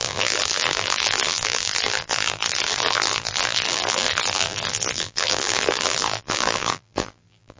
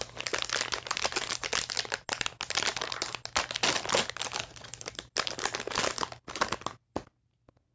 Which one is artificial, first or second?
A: first